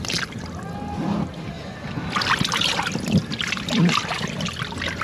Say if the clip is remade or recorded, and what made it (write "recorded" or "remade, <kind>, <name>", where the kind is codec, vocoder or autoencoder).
recorded